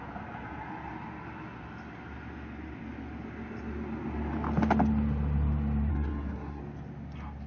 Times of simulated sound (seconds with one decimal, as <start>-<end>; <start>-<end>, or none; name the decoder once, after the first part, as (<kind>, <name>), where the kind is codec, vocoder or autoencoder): 5.9-6.6 (codec, SNAC)